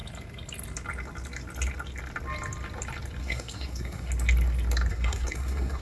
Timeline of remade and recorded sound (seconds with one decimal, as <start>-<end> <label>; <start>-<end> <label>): 0.0-3.2 recorded; 3.2-4.1 remade; 4.1-4.9 recorded; 4.9-5.8 remade